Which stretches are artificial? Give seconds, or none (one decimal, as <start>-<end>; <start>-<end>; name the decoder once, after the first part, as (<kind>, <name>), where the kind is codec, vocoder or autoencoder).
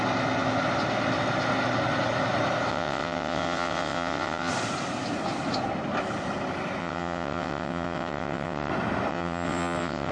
2.7-4.5 (vocoder, WaveNeXt); 6.8-8.7; 9.1-10.1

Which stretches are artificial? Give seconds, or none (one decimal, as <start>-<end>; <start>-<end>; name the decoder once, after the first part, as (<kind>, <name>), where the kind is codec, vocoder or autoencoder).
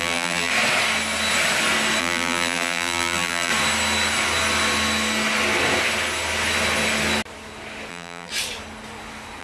0.0-0.5 (vocoder, BigVGAN v2); 2.0-3.5; 7.9-8.3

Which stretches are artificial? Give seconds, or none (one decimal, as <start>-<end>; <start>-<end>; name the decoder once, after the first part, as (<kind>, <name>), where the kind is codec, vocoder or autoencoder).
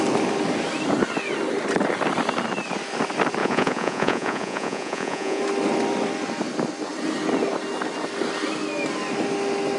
3.4-5.4 (vocoder, Vocos)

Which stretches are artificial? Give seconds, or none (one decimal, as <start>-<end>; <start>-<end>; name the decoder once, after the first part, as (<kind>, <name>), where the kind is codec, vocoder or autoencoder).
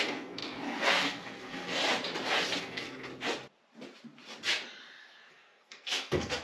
0.0-1.8 (codec, SNAC); 2.6-3.1; 5.3-6.4